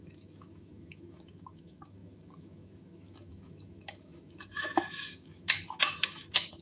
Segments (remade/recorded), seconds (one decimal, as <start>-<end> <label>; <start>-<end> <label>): 0.0-6.6 remade